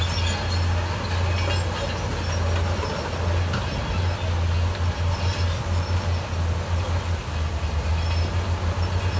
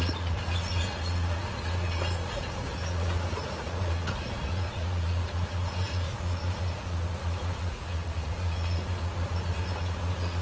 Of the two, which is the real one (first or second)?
first